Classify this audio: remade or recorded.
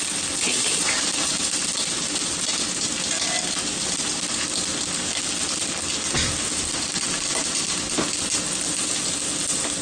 recorded